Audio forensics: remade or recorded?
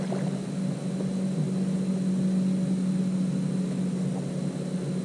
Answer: recorded